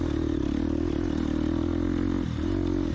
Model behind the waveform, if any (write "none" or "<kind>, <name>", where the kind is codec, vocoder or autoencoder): none